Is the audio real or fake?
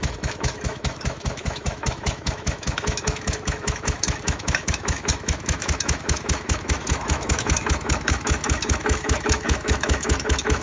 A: fake